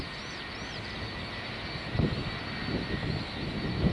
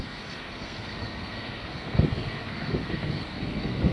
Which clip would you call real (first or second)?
first